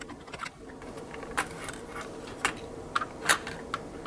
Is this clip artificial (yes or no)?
no